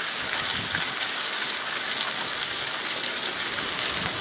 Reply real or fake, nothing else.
fake